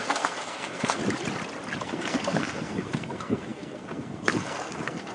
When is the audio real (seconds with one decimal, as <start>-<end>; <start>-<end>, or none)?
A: 1.0-1.8